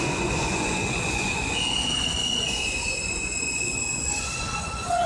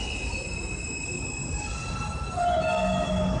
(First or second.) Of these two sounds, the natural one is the second